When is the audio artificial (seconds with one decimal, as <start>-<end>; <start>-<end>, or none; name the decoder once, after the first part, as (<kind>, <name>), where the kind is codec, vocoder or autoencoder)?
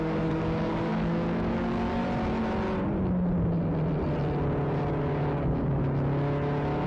0.0-2.0 (codec, DAC); 5.0-5.8